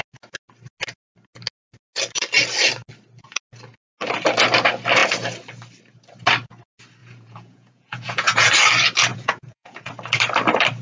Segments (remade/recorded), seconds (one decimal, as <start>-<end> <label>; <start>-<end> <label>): 0.0-7.0 recorded; 7.0-8.5 remade; 8.5-9.1 recorded; 9.1-9.9 remade; 9.9-10.8 recorded